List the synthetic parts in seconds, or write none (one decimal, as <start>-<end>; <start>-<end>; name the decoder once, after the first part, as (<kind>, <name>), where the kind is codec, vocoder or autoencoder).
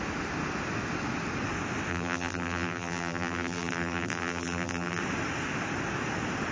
1.9-5.0 (vocoder, BigVGAN v2)